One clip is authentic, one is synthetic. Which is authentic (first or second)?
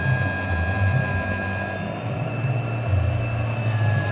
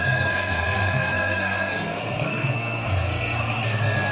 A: first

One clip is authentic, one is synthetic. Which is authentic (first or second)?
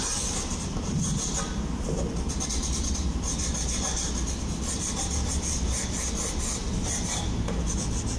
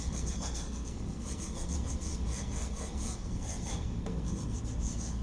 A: first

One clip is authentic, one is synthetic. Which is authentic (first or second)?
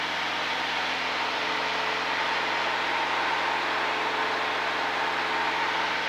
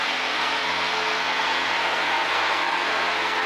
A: first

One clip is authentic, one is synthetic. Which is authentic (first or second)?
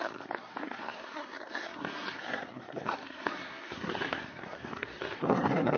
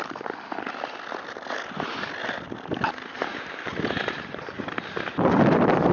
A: second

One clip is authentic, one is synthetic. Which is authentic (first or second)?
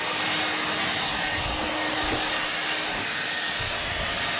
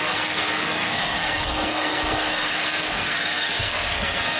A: first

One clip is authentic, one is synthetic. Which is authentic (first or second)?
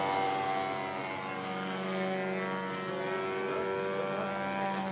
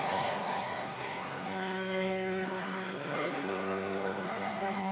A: first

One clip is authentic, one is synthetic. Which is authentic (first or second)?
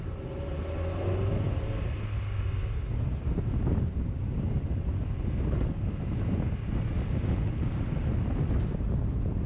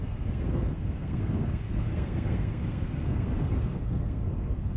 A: first